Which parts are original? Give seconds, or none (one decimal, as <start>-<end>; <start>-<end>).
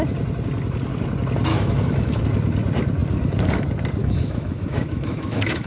0.0-1.5; 2.2-4.0